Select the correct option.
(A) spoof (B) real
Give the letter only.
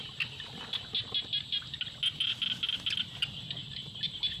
B